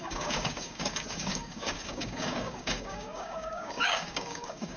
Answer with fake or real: fake